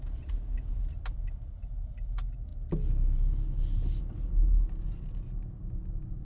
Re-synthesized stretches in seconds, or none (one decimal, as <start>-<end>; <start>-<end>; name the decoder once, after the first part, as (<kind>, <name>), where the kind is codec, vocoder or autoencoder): none

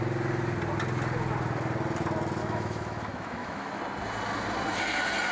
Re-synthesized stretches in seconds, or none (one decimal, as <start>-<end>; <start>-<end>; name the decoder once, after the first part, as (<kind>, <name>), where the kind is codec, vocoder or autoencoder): 2.4-3.8 (autoencoder, DAC-VAE)

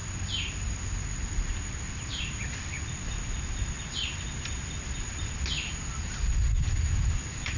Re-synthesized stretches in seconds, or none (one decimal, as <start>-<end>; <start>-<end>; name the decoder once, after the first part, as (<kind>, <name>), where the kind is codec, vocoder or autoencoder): none

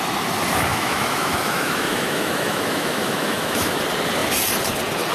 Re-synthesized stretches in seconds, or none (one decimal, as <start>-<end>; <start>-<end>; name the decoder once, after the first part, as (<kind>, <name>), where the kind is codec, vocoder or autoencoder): 0.7-3.8 (autoencoder, DAC-VAE)

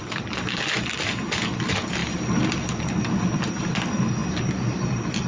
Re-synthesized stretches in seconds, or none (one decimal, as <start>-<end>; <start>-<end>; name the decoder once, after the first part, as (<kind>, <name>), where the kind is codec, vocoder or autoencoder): none

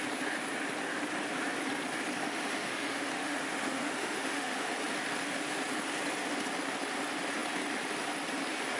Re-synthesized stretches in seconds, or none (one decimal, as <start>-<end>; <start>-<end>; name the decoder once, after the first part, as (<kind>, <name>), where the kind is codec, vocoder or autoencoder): 2.2-4.7 (autoencoder, DAC-VAE)

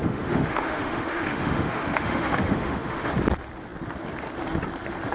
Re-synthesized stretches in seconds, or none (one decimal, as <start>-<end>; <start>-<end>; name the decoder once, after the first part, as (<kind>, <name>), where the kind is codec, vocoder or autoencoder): 0.0-3.1 (autoencoder, DAC-VAE)

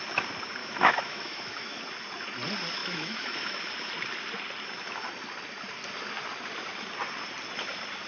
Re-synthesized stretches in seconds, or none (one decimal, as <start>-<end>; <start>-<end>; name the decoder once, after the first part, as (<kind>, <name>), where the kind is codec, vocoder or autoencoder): 0.6-1.8 (autoencoder, DAC-VAE); 2.8-3.6